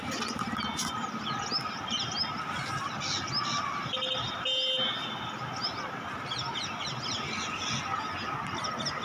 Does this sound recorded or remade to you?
recorded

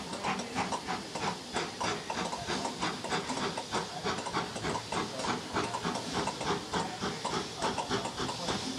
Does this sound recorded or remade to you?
recorded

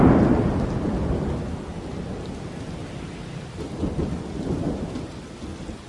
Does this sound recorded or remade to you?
recorded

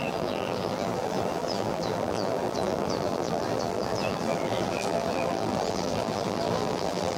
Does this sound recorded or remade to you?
remade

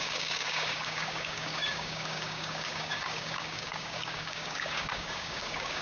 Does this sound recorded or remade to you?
remade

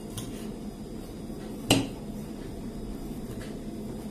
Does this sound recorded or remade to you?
recorded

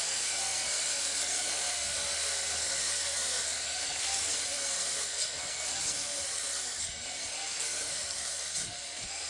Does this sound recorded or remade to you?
remade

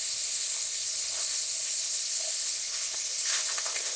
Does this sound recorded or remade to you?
remade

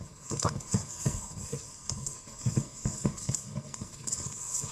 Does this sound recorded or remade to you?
remade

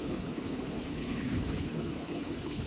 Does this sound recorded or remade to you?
remade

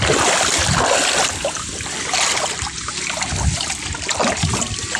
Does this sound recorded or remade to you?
recorded